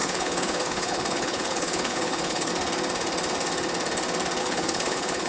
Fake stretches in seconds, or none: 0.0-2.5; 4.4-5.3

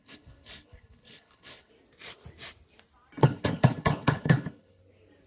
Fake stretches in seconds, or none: 0.0-1.7; 3.2-4.8

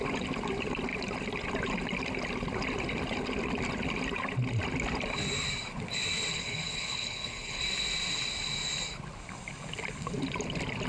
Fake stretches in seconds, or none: 6.3-7.6

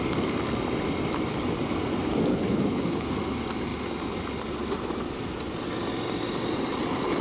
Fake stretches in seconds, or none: 2.3-3.1

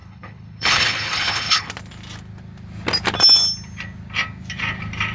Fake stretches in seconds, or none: 0.0-1.7